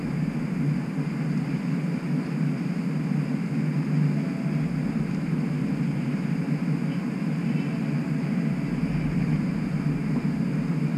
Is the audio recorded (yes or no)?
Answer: yes